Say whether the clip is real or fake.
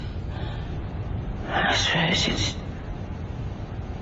real